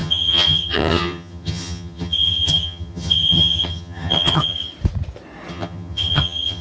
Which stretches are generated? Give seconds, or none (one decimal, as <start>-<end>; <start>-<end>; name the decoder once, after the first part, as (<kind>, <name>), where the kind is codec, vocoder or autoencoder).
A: 0.0-4.7 (vocoder, HiFi-GAN); 5.5-6.6